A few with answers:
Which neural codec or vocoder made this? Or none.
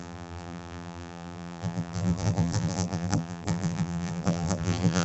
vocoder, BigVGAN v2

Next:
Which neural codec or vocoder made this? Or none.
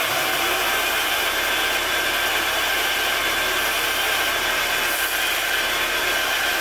vocoder, BigVGAN v2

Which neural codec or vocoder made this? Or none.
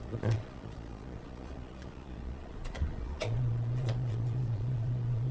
vocoder, Vocos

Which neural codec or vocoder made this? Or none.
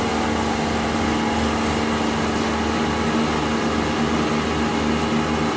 none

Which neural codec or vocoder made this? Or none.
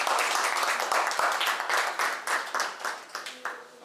none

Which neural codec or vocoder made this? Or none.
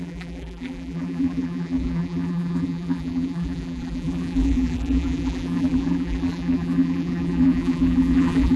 vocoder, BigVGAN v2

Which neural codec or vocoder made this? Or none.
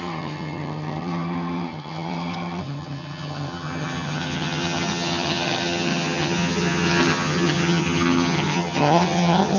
vocoder, HiFi-GAN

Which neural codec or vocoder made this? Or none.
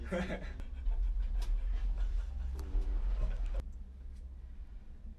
none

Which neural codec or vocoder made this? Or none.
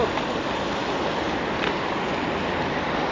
none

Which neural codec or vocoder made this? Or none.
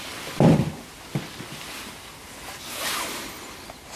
none